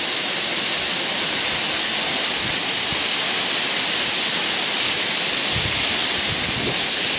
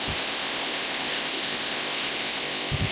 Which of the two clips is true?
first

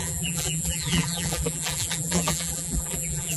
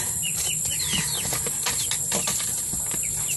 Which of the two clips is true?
second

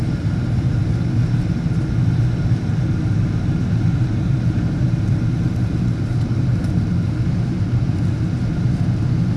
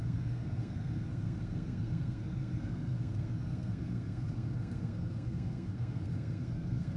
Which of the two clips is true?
first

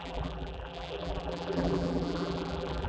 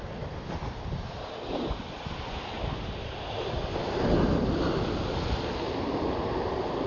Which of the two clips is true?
second